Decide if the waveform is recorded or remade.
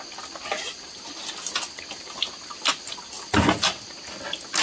recorded